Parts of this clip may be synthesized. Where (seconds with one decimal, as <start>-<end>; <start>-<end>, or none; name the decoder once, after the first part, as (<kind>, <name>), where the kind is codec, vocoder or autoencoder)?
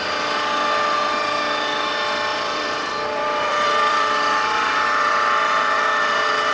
2.3-6.5 (vocoder, BigVGAN v2)